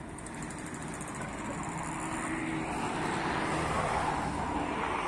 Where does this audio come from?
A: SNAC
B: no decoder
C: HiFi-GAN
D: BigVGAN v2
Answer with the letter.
B